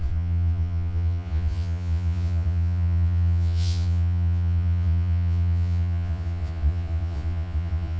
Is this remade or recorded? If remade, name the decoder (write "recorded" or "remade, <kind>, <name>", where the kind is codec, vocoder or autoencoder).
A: remade, vocoder, Vocos